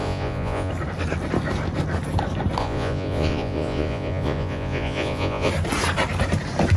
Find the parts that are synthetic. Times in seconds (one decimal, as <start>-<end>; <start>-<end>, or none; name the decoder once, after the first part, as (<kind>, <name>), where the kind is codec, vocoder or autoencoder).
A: 0.0-0.7 (vocoder, Vocos); 2.6-5.5